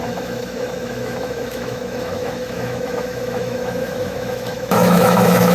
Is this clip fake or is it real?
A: fake